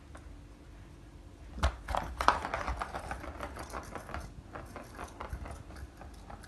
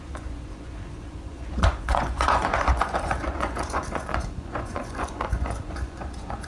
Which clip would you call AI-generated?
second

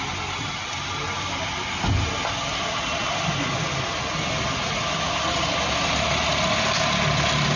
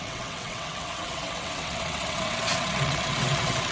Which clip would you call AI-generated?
second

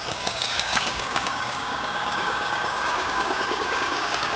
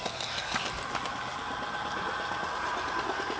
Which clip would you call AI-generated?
first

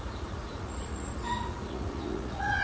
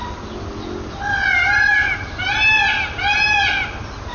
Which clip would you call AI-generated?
first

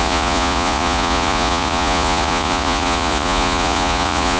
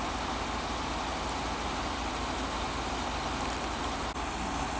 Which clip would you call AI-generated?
first